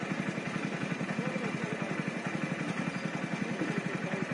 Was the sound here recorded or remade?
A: recorded